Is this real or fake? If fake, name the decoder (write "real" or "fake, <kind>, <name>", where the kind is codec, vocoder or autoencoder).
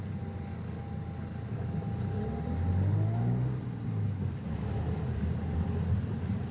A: real